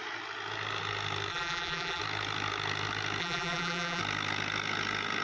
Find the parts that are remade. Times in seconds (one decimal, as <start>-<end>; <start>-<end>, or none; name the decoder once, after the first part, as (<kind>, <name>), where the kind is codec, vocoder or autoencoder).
1.3-2.0 (vocoder, BigVGAN v2); 3.2-4.0